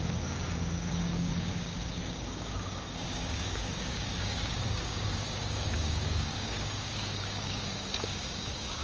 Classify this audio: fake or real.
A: fake